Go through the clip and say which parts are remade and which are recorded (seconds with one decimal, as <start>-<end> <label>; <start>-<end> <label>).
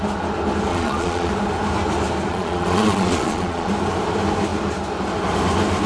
0.0-0.7 recorded; 0.7-1.3 remade; 1.3-2.3 recorded; 2.3-3.7 remade; 3.7-5.9 recorded